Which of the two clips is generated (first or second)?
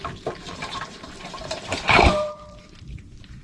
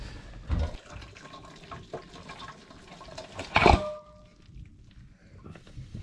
first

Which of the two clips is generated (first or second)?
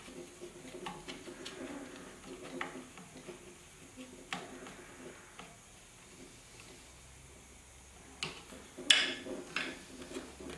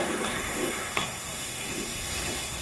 second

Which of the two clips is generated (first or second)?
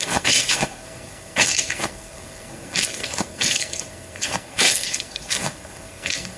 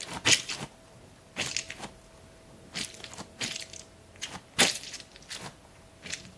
first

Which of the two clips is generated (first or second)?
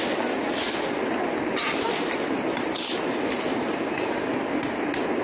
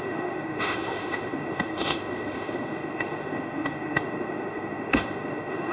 second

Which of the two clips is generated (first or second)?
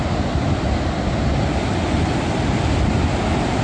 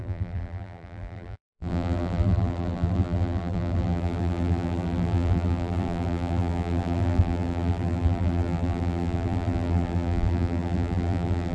second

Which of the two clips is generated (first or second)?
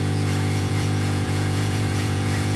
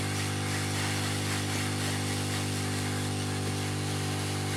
first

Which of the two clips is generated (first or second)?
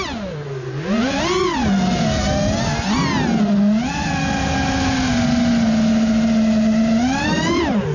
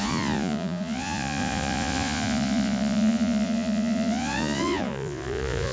second